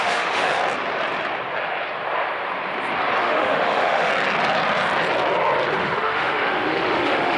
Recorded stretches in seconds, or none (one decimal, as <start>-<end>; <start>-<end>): 0.6-3.2; 4.1-5.8